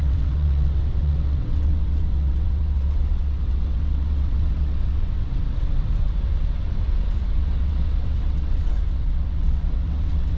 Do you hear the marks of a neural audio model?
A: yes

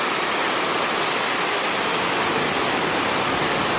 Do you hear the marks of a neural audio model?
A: no